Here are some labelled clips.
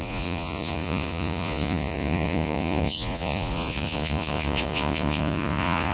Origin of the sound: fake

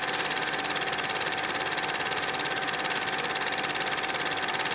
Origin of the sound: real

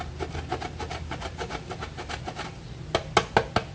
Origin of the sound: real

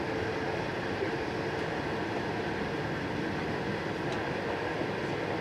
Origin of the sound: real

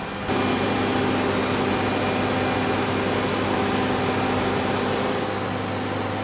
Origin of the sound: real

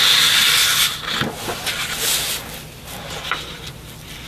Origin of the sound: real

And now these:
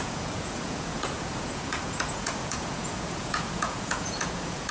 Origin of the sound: fake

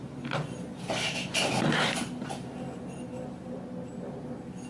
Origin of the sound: real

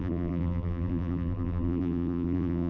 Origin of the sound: fake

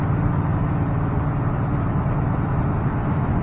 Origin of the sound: real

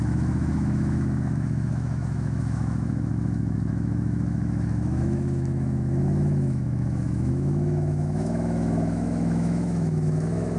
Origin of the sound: fake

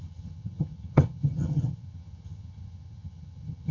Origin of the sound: fake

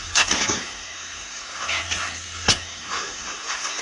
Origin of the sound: fake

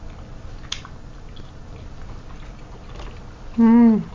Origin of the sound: real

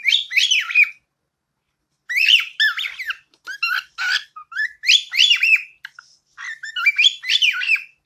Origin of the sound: real